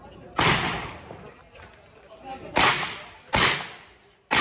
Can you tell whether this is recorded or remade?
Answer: recorded